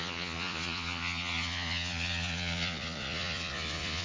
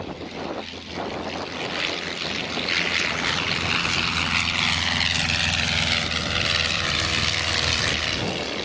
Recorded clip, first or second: second